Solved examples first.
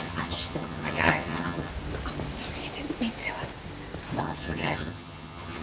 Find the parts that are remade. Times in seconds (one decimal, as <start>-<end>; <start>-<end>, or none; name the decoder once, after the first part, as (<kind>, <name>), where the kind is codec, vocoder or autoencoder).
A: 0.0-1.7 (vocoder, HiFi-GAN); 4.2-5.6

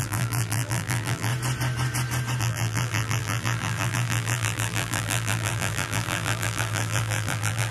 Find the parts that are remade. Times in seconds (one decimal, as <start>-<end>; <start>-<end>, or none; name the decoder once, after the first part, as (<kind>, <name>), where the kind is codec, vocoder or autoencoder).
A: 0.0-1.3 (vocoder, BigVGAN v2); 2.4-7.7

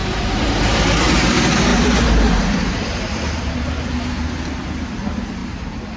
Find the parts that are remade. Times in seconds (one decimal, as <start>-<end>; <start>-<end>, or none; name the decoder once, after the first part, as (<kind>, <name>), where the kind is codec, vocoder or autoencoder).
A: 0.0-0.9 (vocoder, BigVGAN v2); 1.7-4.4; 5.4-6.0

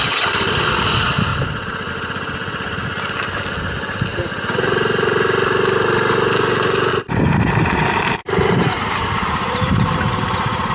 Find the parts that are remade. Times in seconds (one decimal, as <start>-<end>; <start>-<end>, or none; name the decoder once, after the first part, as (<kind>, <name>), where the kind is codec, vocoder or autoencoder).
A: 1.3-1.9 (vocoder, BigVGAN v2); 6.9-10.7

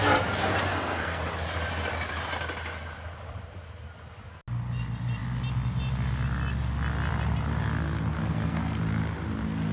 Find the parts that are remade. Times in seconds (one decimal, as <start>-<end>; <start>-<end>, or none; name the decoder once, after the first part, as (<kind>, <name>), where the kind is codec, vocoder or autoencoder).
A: 0.7-1.2 (codec, SNAC); 8.2-8.8

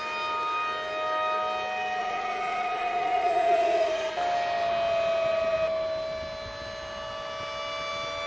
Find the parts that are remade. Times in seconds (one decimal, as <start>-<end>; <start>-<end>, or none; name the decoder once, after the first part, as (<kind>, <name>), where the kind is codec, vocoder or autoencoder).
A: 2.0-4.1 (vocoder, Vocos)